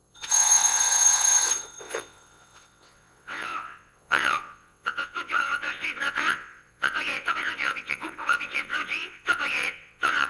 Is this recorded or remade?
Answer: remade